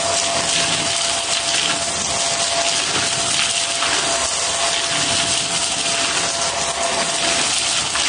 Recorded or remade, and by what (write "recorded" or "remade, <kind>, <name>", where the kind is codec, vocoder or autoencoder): recorded